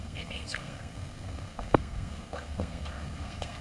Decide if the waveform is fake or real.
fake